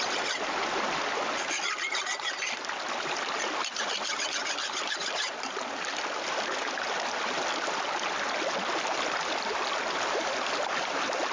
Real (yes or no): yes